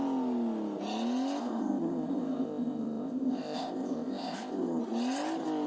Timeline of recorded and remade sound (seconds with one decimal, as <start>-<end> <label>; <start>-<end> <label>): 0.0-1.4 recorded; 1.4-4.8 remade; 4.8-5.7 recorded